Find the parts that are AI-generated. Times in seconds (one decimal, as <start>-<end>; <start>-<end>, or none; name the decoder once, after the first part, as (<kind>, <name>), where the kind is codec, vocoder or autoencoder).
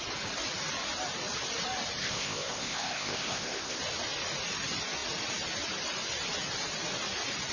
2.0-3.8 (codec, ZipCodec)